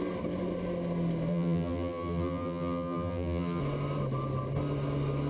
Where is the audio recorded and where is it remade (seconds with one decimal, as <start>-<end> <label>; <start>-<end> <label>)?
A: 0.0-1.3 recorded; 1.3-3.6 remade; 3.6-5.3 recorded